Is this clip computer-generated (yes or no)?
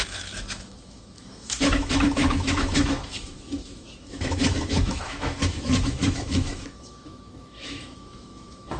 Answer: yes